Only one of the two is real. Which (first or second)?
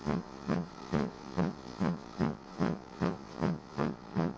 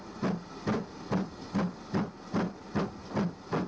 second